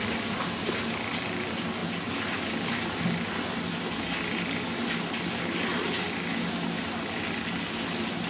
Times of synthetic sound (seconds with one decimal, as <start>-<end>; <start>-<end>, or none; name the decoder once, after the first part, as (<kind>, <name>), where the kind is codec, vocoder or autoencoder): none